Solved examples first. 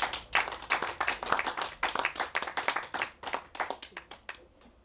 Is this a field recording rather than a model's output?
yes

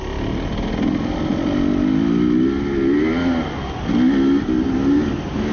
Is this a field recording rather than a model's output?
yes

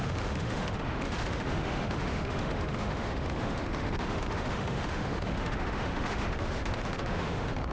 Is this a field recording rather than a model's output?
no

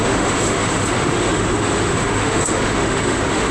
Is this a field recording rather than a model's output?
no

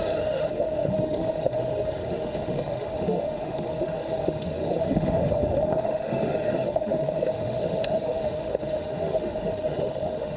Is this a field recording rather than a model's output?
no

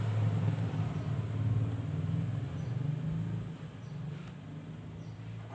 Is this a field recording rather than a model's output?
yes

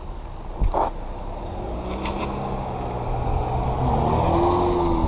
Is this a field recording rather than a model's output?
yes